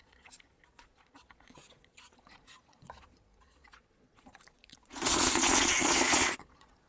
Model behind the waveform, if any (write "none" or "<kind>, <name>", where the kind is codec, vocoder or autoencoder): vocoder, Vocos